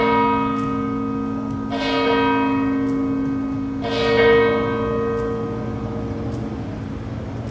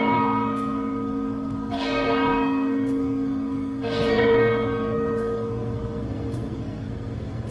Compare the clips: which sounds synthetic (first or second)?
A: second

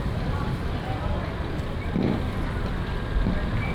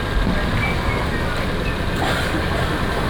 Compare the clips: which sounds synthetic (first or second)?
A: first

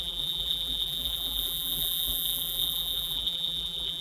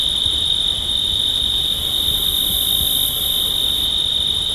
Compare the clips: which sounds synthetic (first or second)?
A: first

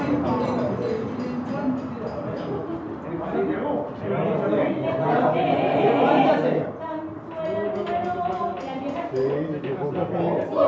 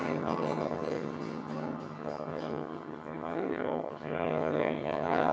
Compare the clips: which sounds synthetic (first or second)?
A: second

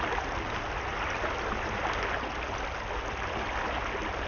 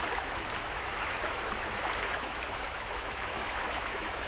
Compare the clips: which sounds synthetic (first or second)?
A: second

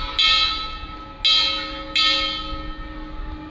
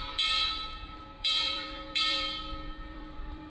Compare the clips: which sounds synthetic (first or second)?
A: second